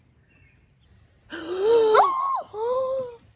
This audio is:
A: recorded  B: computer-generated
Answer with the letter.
A